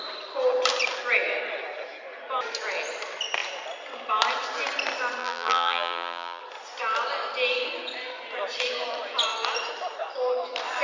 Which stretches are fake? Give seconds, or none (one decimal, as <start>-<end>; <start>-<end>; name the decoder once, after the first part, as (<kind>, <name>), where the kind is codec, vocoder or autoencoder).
5.2-6.4 (vocoder, BigVGAN v2)